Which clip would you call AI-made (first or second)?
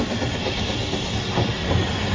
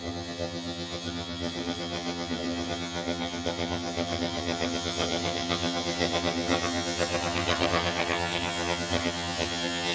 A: second